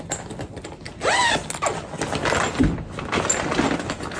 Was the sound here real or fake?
real